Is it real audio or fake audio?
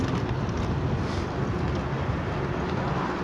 real